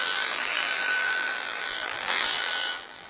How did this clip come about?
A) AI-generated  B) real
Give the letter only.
A